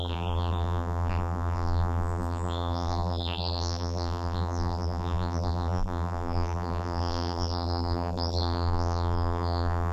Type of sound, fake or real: fake